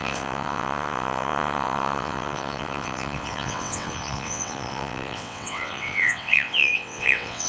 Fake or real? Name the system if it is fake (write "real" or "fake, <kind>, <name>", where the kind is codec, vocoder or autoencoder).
fake, vocoder, WaveNeXt